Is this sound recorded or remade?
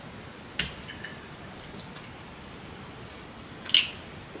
recorded